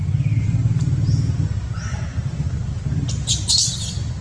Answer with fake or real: real